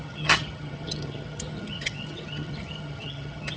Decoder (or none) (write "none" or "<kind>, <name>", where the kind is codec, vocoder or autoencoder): vocoder, HiFi-GAN